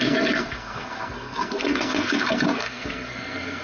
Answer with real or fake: fake